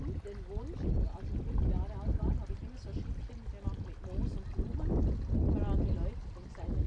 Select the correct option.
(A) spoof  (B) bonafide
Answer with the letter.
B